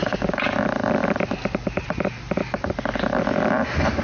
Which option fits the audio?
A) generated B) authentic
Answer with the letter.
B